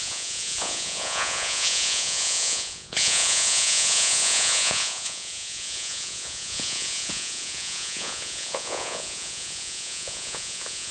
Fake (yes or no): yes